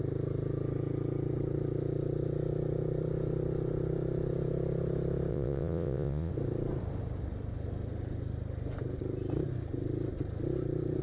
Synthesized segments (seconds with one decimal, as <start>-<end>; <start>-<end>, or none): 5.3-6.3